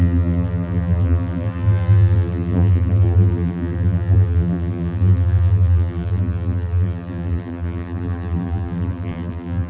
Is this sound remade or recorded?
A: remade